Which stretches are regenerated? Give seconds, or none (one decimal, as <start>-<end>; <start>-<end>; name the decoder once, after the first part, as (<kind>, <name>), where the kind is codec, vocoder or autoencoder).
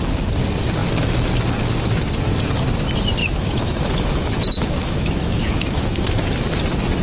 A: 3.2-6.3 (autoencoder, DAC-VAE)